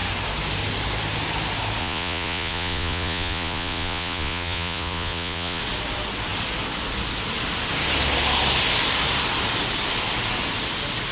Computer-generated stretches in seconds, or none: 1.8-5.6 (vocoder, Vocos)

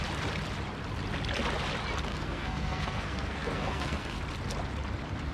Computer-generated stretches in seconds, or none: 2.1-4.2 (codec, SNAC)

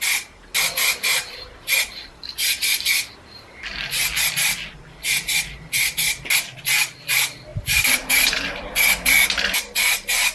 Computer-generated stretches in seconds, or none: 7.5-8.7 (vocoder, BigVGAN v2)

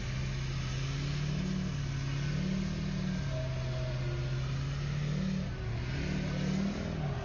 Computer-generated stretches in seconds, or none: none

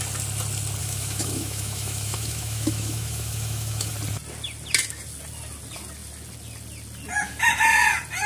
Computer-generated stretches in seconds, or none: 0.8-3.9 (autoencoder, DAC-VAE)

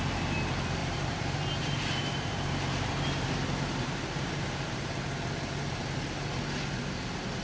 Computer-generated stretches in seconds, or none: 0.8-4.8 (vocoder, BigVGAN v2)

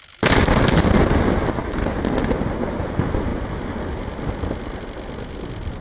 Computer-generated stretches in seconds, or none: none

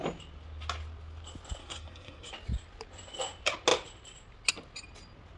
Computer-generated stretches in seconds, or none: 1.6-2.3 (codec, SNAC)